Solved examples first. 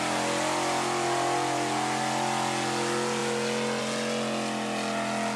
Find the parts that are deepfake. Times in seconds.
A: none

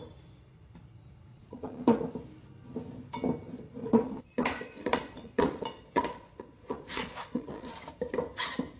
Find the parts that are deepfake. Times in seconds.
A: 1.3-2.0 (vocoder, Vocos); 3.8-7.7

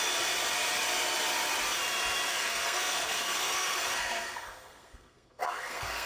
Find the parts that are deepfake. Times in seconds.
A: 2.3-6.1 (codec, SNAC)

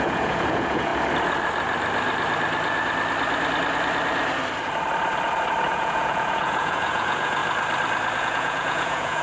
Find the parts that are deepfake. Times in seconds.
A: 0.0-0.9 (vocoder, Vocos); 5.7-7.4; 8.2-9.2

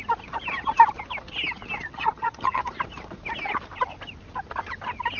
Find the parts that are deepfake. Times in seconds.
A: 1.9-2.6 (vocoder, HiFi-GAN)

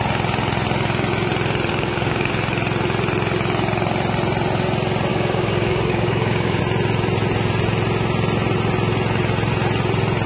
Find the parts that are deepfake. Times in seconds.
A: 1.7-2.3 (codec, DAC); 5.1-6.6

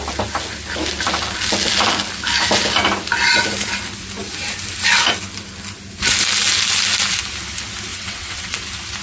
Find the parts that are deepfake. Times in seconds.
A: 7.9-8.6 (vocoder, WaveNeXt)

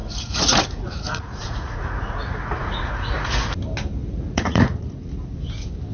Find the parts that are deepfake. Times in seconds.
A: 0.0-3.5 (vocoder, Vocos); 4.0-5.1